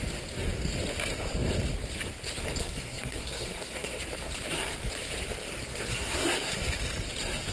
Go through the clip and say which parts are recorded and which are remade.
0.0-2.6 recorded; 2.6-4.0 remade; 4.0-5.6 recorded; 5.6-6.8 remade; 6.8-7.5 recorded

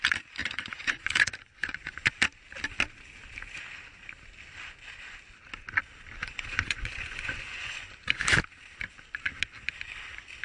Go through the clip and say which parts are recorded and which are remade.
0.0-0.4 recorded; 0.4-2.1 remade; 2.1-6.2 recorded; 6.2-8.2 remade; 8.2-10.4 recorded

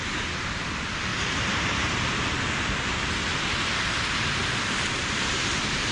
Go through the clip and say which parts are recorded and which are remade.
0.0-1.1 recorded; 1.1-2.1 remade; 2.1-4.4 recorded; 4.4-5.9 remade

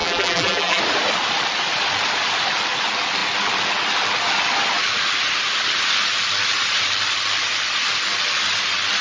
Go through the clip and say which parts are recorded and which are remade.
0.0-0.8 remade; 0.8-9.0 recorded

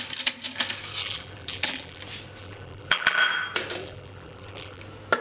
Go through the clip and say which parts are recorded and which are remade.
0.0-1.0 recorded; 1.0-2.0 remade; 2.0-2.4 recorded; 2.4-3.2 remade; 3.2-3.8 recorded; 3.8-4.8 remade; 4.8-5.2 recorded

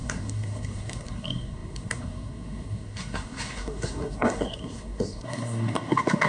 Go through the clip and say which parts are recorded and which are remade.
0.0-6.3 remade

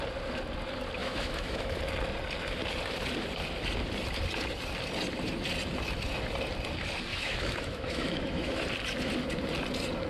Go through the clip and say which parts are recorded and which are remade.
0.0-1.0 recorded; 1.0-1.8 remade; 1.8-7.1 recorded; 7.1-8.6 remade; 8.6-10.1 recorded

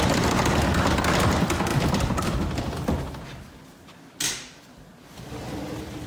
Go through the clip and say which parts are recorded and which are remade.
0.0-6.1 recorded